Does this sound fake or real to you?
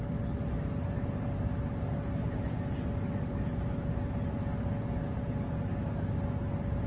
real